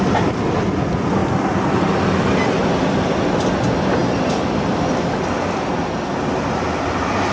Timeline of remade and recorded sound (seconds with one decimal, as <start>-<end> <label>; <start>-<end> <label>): 0.0-7.3 recorded